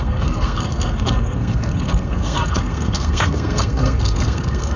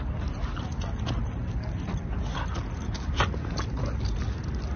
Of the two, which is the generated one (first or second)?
first